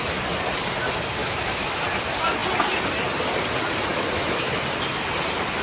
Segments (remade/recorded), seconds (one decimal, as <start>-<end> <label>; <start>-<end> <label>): 0.0-1.2 recorded; 1.2-1.8 remade; 1.8-3.9 recorded; 3.9-4.6 remade; 4.6-5.6 recorded